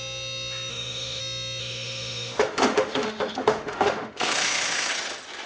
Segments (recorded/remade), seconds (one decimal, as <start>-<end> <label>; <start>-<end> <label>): 0.0-0.7 recorded; 0.7-1.2 remade; 1.2-1.6 recorded; 1.6-4.9 remade; 4.9-5.5 recorded